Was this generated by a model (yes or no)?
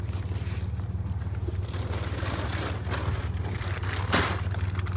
no